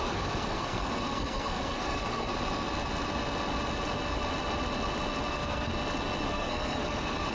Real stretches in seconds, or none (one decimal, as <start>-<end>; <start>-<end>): 2.3-5.3; 5.7-6.3